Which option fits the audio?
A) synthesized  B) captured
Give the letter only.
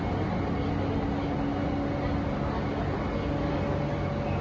B